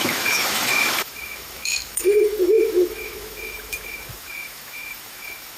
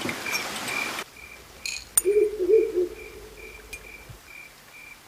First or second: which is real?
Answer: second